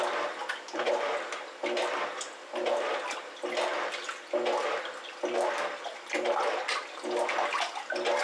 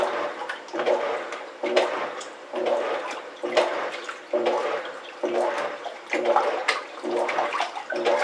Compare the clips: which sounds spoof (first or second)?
second